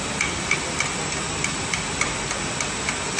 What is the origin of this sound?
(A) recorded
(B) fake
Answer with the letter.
A